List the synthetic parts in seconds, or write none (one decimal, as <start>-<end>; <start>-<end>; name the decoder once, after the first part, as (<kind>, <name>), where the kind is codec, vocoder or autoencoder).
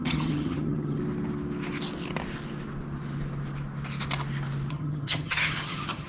0.0-1.0 (vocoder, HiFi-GAN); 4.7-6.1